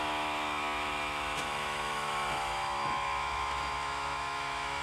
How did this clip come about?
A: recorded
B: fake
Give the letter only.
B